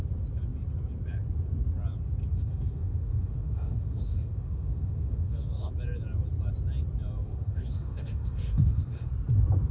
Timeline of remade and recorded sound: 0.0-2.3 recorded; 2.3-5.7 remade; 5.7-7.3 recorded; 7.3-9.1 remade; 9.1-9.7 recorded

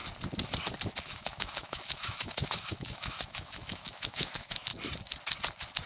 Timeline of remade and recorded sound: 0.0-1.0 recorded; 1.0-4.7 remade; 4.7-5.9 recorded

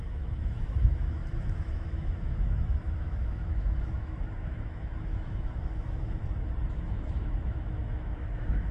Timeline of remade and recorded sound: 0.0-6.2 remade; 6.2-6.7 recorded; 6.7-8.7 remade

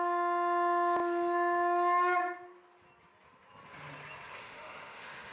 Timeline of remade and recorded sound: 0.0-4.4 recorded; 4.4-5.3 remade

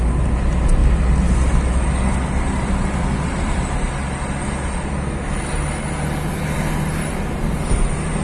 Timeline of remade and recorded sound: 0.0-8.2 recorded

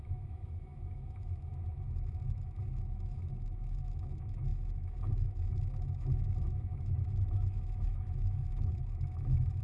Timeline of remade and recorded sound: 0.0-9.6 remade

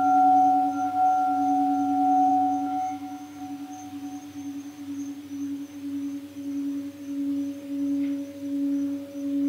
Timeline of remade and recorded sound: 0.0-2.3 recorded; 2.3-3.4 remade; 3.4-9.5 recorded